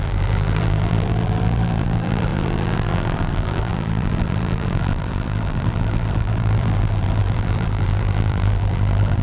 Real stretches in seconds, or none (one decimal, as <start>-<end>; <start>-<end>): none